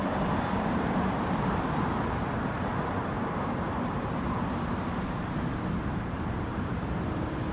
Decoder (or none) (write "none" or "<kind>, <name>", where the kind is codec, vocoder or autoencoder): vocoder, BigVGAN v2